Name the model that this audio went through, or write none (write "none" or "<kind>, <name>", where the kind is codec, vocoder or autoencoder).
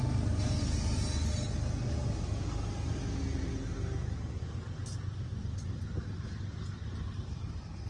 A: none